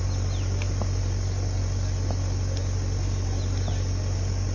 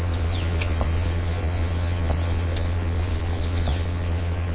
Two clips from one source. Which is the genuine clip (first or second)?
first